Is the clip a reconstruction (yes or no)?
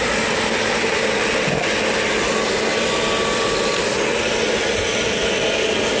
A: no